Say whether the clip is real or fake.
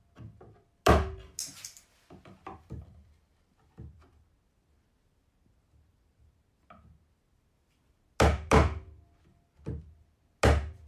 real